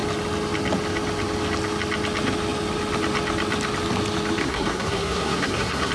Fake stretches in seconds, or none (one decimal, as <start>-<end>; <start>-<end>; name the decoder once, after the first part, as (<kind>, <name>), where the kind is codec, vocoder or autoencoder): 4.4-5.9 (codec, SNAC)